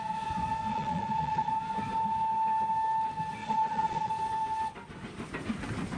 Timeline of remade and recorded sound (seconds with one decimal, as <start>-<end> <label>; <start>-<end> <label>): 0.0-0.7 recorded; 0.7-1.5 remade; 1.5-3.4 recorded; 3.4-4.1 remade; 4.1-6.0 recorded